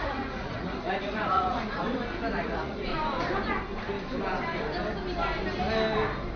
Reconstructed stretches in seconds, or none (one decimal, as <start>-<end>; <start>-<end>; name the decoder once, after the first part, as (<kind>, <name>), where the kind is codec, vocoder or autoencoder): 0.0-1.8 (vocoder, Vocos); 2.4-2.9